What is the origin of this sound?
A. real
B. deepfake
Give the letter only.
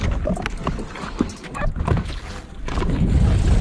A